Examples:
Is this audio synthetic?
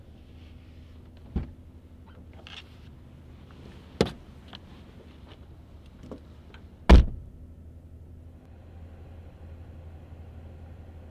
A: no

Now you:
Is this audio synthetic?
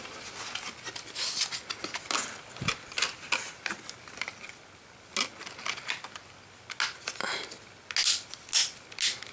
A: no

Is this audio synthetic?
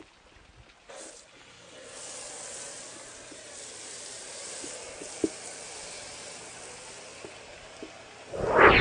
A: no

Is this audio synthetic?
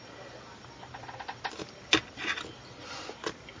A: no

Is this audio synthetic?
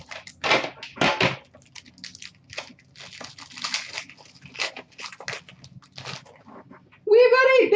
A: no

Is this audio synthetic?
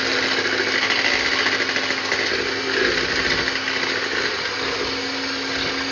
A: no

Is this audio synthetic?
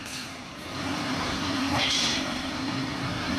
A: yes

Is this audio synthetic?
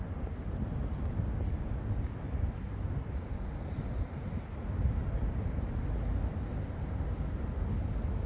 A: no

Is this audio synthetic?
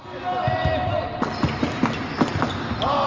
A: no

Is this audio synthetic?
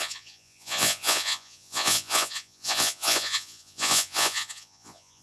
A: yes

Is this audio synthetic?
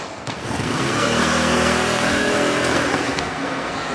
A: yes